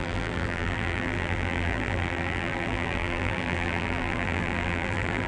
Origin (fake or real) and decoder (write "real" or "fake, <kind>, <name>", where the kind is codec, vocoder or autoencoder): fake, vocoder, BigVGAN v2